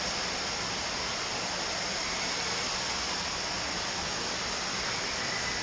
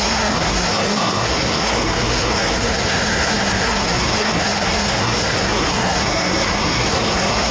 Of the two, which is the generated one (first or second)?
second